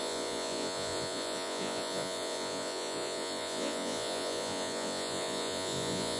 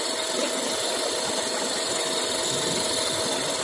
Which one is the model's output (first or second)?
first